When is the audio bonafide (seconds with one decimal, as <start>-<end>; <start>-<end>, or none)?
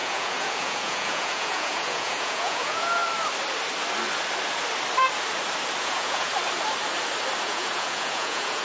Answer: 3.0-5.8; 6.3-7.4